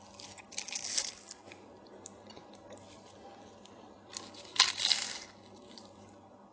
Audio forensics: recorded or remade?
recorded